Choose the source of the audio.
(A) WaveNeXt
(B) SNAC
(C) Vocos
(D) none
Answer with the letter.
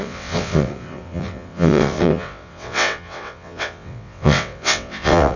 A